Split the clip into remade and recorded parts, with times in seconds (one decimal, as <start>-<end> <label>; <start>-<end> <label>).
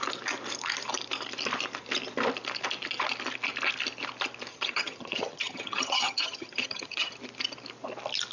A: 0.0-4.5 recorded; 4.5-7.1 remade; 7.1-8.3 recorded